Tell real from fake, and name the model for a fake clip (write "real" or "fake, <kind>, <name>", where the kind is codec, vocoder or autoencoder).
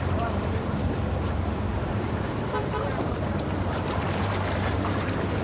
fake, vocoder, BigVGAN v2